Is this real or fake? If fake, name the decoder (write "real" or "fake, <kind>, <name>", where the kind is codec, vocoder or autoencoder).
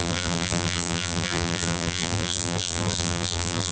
fake, vocoder, BigVGAN v2